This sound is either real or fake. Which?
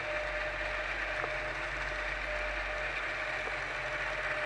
real